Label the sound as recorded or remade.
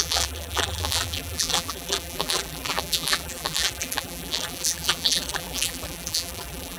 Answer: remade